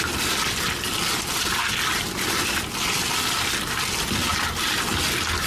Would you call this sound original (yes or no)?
yes